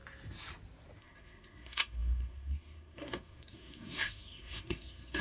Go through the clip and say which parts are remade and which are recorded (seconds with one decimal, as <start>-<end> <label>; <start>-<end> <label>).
0.0-1.0 recorded; 1.0-5.2 remade